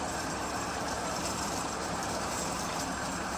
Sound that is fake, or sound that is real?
fake